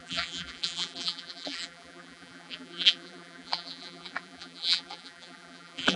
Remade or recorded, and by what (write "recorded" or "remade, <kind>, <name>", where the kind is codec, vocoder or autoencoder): remade, vocoder, BigVGAN v2